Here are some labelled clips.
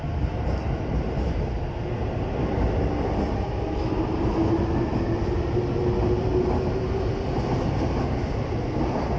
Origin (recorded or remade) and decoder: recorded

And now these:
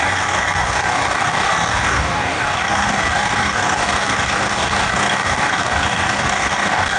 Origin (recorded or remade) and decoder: remade, codec, DAC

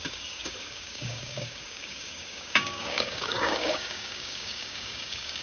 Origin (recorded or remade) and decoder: remade, codec, DAC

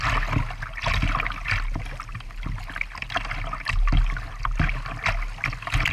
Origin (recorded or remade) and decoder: recorded